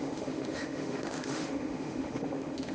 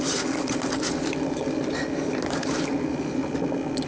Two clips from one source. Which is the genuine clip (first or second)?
second